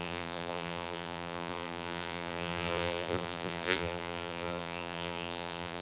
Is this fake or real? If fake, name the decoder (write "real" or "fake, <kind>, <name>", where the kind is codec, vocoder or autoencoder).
fake, vocoder, BigVGAN v2